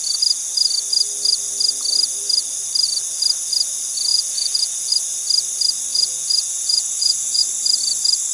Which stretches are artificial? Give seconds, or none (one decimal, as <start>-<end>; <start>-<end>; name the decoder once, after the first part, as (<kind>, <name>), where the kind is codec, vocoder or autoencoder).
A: 4.1-4.9 (vocoder, Vocos); 5.9-7.4